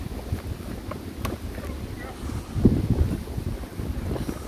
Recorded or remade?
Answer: recorded